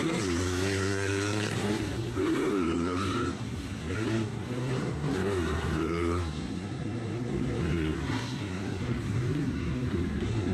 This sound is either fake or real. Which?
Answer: fake